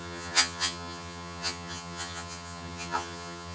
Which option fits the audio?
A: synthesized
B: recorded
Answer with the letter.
A